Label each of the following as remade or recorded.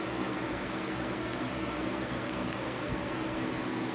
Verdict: remade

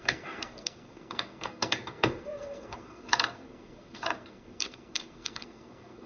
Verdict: remade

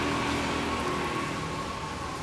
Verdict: recorded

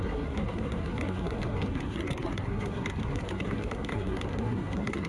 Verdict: remade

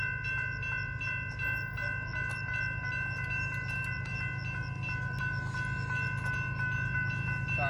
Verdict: recorded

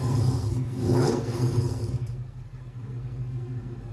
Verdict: remade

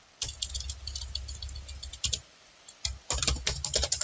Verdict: recorded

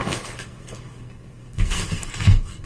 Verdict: remade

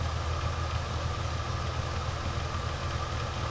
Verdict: recorded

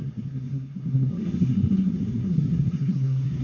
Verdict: remade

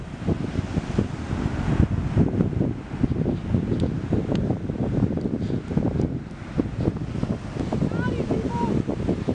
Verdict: recorded